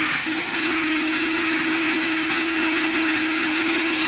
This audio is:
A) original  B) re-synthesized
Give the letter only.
B